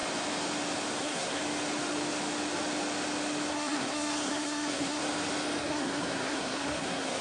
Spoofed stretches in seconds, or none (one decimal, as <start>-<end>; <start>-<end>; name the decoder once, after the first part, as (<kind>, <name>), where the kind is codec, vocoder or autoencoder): 1.0-1.4 (codec, SNAC); 3.5-5.0; 5.6-7.2

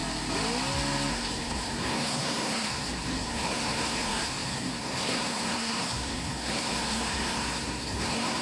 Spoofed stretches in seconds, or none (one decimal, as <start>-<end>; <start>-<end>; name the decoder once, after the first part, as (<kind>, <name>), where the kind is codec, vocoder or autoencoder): 1.1-8.4 (codec, SNAC)

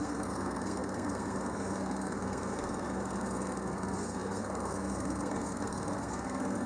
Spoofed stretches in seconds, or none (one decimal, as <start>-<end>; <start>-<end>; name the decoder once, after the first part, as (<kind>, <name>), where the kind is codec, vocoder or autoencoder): 0.0-6.7 (codec, SNAC)

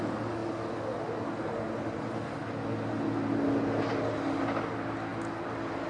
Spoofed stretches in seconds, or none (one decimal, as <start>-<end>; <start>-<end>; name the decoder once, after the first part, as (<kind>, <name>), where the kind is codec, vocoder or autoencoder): none

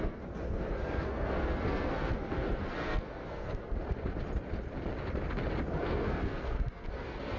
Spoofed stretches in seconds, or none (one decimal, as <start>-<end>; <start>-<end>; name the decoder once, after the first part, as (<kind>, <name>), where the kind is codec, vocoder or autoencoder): 0.0-3.8 (codec, SNAC); 5.7-7.4

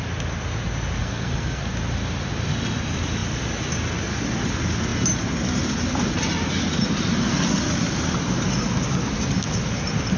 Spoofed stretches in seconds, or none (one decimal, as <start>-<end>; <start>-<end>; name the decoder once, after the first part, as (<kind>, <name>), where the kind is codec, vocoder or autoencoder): 1.0-1.6 (codec, SNAC)

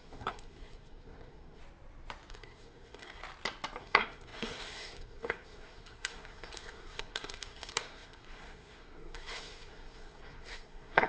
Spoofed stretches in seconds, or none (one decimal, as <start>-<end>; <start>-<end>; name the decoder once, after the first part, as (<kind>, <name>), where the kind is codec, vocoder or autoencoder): 0.0-1.6 (codec, SNAC); 2.3-3.2; 3.8-11.1